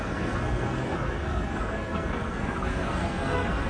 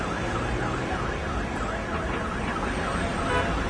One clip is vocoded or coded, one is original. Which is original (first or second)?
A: second